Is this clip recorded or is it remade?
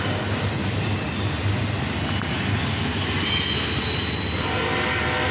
recorded